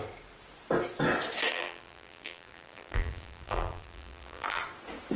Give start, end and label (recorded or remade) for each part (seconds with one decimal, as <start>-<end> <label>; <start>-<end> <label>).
0.0-1.5 recorded; 1.5-4.6 remade; 4.6-5.2 recorded